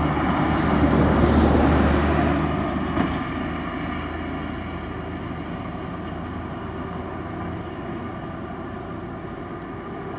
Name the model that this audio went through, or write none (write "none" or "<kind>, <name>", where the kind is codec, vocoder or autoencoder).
none